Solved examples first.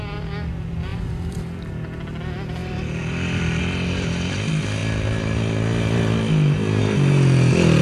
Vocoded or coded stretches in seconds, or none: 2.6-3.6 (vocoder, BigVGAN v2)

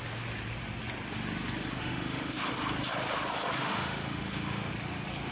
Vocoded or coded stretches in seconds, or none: 1.8-2.5 (autoencoder, DAC-VAE); 3.6-4.7

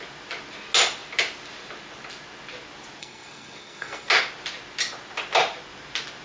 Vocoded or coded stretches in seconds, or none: 3.0-4.1 (codec, SNAC)

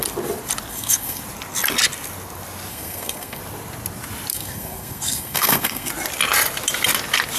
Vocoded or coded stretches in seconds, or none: 0.7-1.2 (codec, SNAC); 2.7-3.4; 4.3-5.9

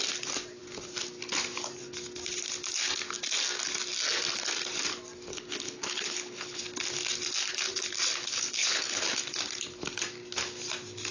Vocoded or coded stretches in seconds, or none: 5.3-6.6 (codec, HILCodec); 8.2-9.2

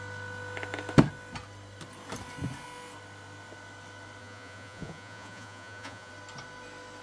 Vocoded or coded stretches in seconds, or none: 4.2-6.1 (vocoder, Vocos)

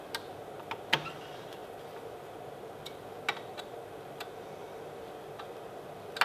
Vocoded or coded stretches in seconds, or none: none

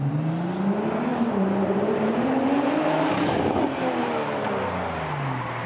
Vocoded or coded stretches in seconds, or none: 1.1-4.5 (vocoder, BigVGAN v2)